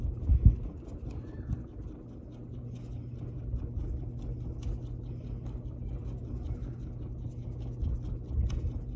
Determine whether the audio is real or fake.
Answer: real